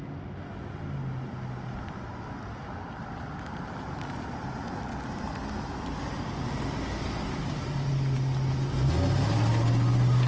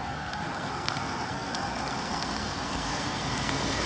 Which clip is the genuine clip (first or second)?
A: first